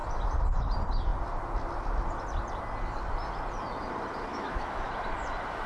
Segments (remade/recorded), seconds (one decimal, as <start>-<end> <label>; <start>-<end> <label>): 0.0-4.3 recorded; 4.3-4.9 remade; 4.9-5.7 recorded